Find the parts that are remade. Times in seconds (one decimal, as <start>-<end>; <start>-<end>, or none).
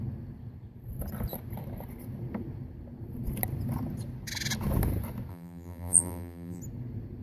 5.3-6.6